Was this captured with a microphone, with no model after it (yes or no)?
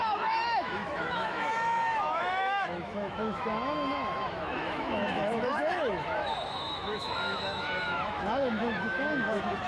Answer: no